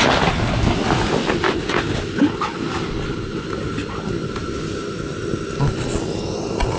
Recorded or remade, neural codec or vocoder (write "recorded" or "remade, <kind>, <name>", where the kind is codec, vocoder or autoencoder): recorded